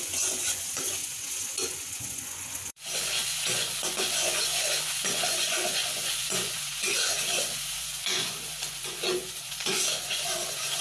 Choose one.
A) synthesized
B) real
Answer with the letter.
A